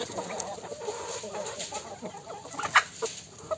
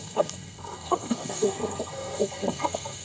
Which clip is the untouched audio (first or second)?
first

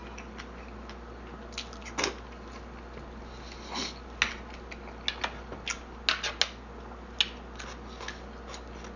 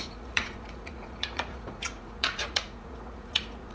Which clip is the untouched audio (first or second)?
first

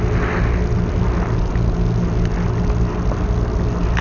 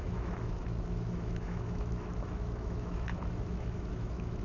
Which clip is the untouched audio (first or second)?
first